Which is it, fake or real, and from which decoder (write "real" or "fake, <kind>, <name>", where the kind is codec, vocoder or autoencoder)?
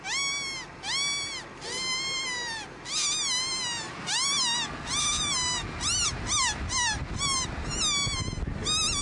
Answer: real